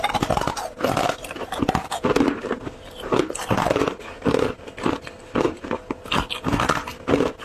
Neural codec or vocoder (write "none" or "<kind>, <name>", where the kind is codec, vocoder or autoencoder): none